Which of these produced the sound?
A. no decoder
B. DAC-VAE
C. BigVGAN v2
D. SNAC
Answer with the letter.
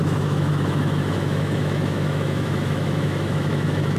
B